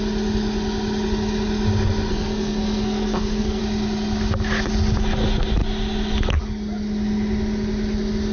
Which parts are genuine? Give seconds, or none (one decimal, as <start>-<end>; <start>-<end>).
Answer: 0.0-2.1; 3.6-8.3